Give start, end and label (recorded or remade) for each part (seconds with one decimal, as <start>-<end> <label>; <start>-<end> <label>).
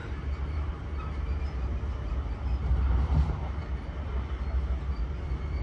0.0-0.7 remade; 0.7-2.6 recorded; 2.6-3.6 remade; 3.6-5.6 recorded